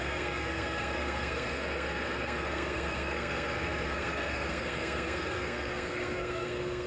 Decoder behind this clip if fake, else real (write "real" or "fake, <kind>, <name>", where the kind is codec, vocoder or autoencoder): fake, codec, SNAC